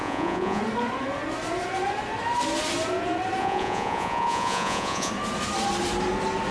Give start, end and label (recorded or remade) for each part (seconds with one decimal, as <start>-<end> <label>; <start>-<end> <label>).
0.0-0.6 remade; 0.6-3.4 recorded; 3.4-5.1 remade; 5.1-6.5 recorded